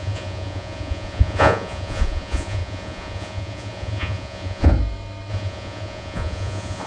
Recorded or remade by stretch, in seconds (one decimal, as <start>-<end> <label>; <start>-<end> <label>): 0.0-4.7 remade; 4.7-5.3 recorded; 5.3-6.9 remade